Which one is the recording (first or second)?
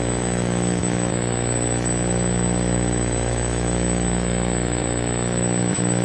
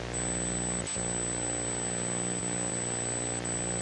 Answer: second